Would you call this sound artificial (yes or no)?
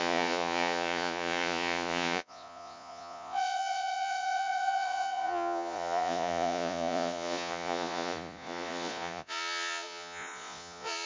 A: yes